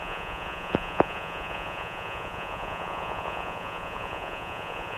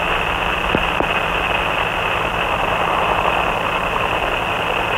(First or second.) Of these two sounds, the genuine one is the second